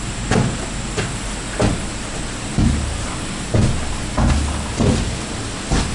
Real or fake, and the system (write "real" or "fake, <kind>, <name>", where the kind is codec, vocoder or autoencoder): real